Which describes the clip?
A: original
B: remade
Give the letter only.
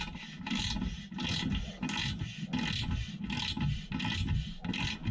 A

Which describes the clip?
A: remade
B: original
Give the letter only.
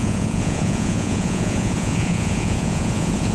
A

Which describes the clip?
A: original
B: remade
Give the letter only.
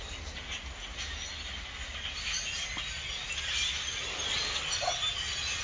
A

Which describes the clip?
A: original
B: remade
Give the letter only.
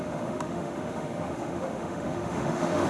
B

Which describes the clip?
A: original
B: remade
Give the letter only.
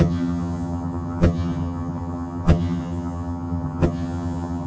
B